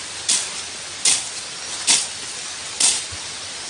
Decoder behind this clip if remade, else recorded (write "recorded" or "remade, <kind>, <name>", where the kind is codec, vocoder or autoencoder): recorded